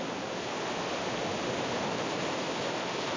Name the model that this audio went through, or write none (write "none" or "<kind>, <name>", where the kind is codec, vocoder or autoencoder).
none